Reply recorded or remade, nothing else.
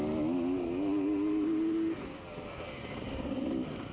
recorded